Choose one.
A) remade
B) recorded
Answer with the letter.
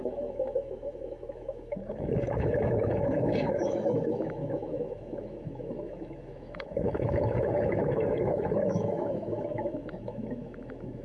A